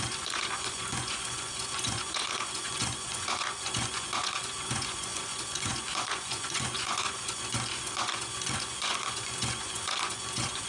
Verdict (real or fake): fake